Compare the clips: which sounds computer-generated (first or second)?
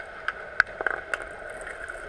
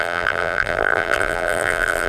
second